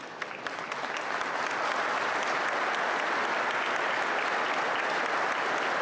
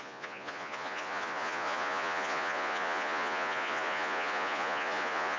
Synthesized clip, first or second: second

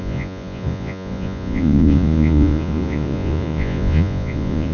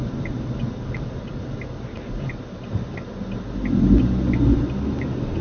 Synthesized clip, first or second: first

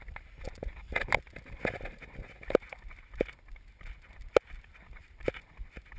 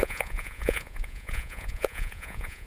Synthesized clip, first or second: second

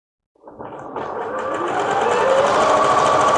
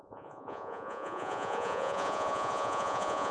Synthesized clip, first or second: second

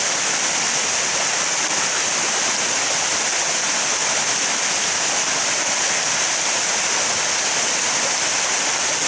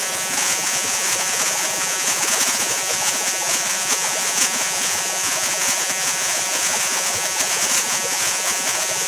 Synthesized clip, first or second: second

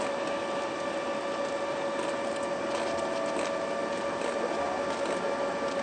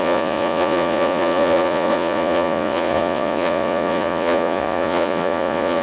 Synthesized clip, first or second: second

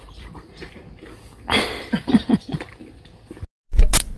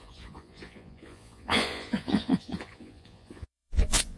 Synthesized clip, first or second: second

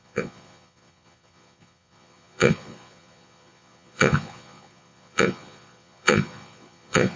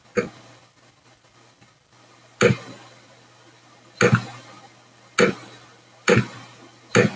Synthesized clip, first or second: first